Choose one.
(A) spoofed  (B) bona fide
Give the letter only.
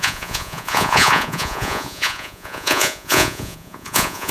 A